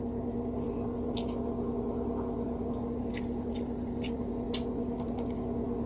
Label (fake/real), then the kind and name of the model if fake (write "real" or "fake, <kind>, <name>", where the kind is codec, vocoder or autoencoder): real